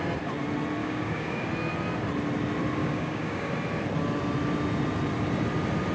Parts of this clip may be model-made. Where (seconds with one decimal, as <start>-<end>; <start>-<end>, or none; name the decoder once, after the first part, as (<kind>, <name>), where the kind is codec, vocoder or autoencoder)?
0.8-1.5 (codec, DAC); 2.8-3.5